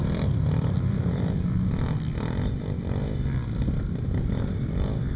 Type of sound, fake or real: real